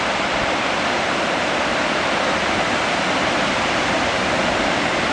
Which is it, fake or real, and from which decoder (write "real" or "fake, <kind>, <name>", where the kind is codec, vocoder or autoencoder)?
fake, vocoder, BigVGAN v2